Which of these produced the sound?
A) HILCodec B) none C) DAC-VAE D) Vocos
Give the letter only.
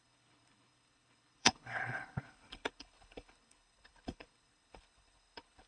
A